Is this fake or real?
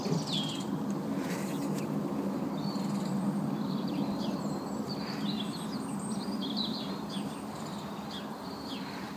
real